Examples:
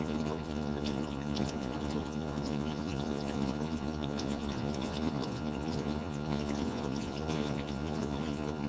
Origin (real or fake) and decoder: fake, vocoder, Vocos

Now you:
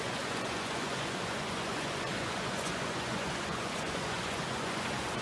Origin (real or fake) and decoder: fake, vocoder, Vocos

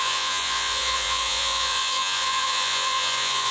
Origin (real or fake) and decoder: fake, vocoder, Vocos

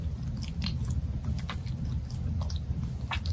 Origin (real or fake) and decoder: real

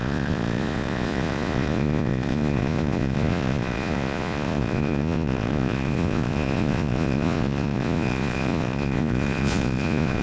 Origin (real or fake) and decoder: fake, vocoder, Vocos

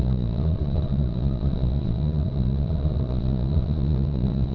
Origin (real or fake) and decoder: fake, vocoder, Vocos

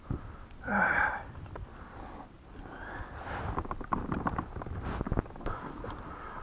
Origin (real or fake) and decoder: real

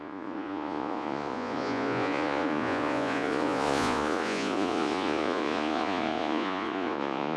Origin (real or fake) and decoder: fake, vocoder, Vocos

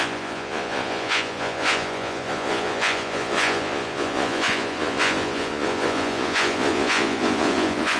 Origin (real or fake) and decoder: fake, vocoder, Vocos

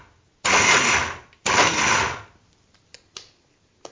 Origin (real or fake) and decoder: real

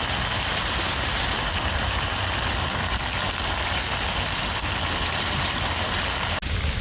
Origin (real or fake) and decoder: real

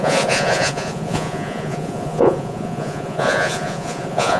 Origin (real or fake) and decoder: fake, vocoder, Vocos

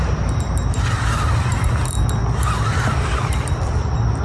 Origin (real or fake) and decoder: real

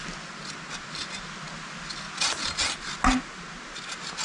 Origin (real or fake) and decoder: real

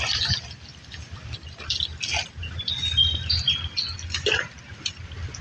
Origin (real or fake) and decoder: real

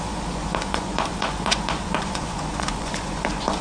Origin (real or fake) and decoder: fake, vocoder, Vocos